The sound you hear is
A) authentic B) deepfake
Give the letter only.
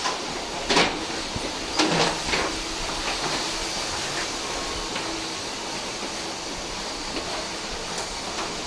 A